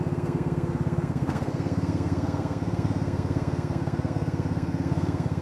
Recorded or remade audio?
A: remade